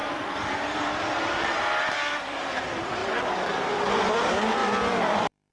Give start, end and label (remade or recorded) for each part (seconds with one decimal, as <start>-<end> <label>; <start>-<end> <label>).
0.0-0.8 recorded; 0.8-3.0 remade; 3.0-4.1 recorded; 4.1-5.5 remade